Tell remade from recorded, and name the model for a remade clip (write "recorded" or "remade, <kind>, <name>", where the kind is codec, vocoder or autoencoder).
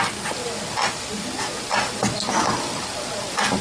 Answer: recorded